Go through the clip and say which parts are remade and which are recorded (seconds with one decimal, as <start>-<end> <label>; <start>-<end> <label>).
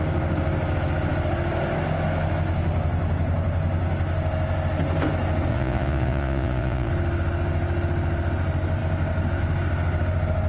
0.0-5.5 recorded; 5.5-6.9 remade; 6.9-10.5 recorded